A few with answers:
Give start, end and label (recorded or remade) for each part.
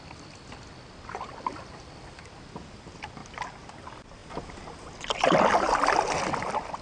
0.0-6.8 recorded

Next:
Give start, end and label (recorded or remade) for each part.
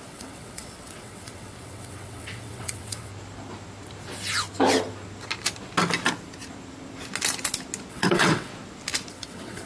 0.0-3.1 remade; 3.1-7.9 recorded; 7.9-8.5 remade; 8.5-9.1 recorded; 9.1-9.7 remade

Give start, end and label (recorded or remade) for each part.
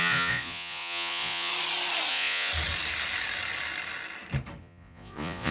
0.0-1.5 remade; 1.5-2.1 recorded; 2.1-2.5 remade; 2.5-4.6 recorded; 4.6-5.5 remade